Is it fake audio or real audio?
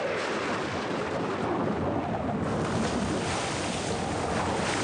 real